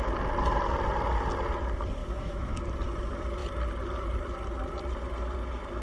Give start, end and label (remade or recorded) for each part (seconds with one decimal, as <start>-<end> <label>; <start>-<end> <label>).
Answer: 0.0-2.0 recorded; 2.0-2.6 remade; 2.6-5.8 recorded